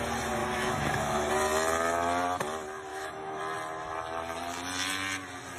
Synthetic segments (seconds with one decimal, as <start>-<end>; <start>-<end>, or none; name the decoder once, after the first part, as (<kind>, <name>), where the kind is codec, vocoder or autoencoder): 0.4-1.3 (autoencoder, DAC-VAE); 2.9-3.4